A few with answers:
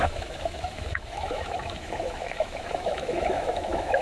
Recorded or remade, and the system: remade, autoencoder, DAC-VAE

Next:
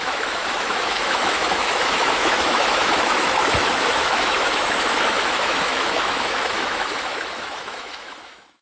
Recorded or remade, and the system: remade, autoencoder, DAC-VAE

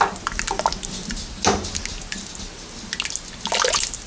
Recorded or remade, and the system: recorded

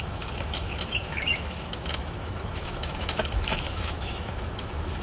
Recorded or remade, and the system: remade, autoencoder, DAC-VAE